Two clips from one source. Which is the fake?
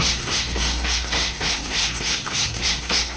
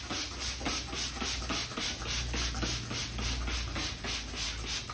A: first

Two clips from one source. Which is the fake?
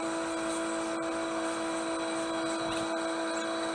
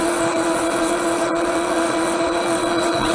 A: second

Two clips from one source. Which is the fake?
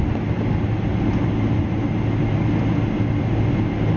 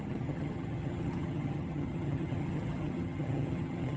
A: second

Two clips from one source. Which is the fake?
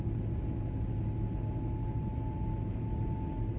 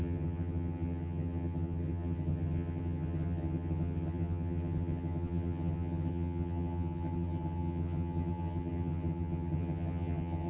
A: second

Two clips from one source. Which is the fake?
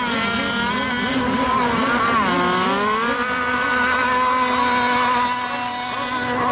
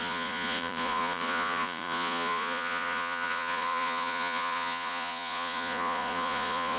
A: second